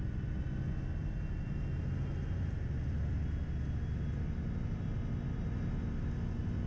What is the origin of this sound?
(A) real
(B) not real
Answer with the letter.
A